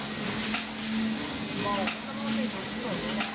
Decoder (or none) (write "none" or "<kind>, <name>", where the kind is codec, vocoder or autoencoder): none